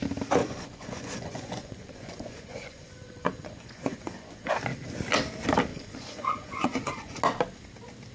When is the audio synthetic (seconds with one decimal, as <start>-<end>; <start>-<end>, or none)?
0.4-4.5; 5.7-7.2